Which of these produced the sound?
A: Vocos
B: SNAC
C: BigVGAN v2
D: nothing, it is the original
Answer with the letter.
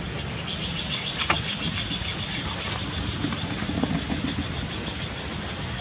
D